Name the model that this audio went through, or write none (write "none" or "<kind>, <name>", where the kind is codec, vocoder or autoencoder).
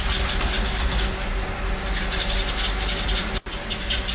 none